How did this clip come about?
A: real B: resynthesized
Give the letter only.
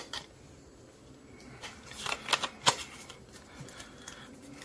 A